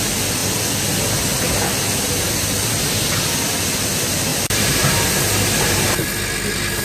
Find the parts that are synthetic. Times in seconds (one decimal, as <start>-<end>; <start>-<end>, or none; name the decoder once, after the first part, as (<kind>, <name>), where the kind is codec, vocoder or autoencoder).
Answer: 4.3-5.8 (vocoder, BigVGAN v2)